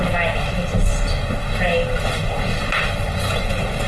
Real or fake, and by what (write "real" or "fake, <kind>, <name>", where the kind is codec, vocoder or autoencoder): real